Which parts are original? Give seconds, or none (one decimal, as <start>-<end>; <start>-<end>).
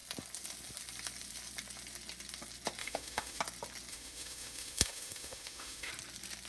0.0-2.8; 3.4-3.9; 5.9-6.5